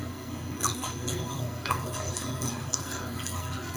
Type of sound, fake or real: fake